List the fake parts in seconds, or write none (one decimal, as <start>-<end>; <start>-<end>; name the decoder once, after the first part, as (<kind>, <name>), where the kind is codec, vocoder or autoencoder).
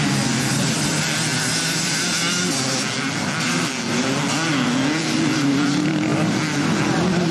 none